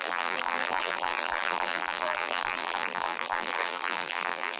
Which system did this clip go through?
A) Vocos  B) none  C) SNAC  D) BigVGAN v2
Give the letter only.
D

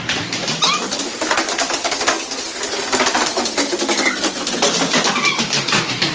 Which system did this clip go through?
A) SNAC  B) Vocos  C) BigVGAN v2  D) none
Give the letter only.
D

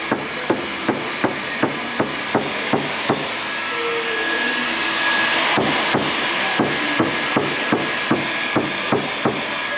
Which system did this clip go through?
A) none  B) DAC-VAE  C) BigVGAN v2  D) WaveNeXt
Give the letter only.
A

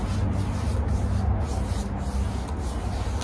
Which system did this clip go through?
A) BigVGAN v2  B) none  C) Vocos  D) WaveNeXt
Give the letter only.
B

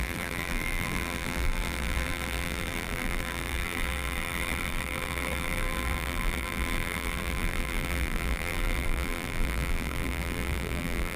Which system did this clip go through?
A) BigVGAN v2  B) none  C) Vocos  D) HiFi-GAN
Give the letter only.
A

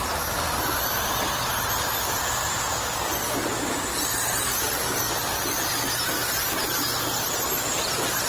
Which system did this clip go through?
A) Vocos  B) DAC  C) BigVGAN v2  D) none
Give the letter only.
D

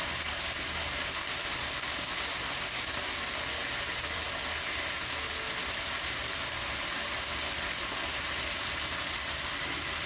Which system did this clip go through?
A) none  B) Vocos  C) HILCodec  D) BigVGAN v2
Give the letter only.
A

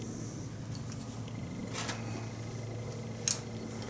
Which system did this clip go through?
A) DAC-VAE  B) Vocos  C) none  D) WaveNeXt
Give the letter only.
C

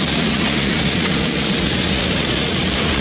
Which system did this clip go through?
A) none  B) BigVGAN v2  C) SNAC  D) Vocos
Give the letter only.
D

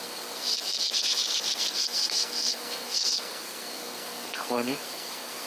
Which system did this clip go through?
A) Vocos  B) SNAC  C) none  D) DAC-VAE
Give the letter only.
B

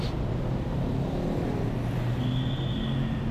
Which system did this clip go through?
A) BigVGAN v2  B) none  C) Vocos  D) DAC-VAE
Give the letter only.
B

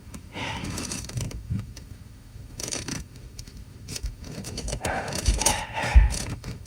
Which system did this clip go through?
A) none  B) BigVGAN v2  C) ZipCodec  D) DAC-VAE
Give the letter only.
D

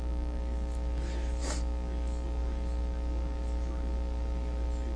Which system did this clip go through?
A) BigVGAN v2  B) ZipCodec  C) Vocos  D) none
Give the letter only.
D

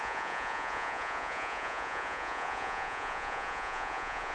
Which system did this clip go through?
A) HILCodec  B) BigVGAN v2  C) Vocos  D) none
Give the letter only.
C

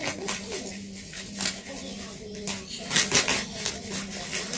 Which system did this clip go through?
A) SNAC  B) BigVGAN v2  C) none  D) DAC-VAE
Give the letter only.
C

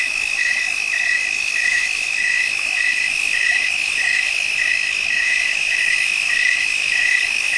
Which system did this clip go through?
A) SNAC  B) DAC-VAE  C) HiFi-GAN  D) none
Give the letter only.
B